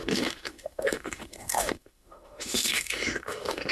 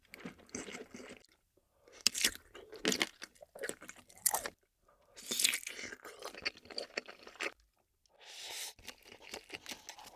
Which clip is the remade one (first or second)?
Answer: first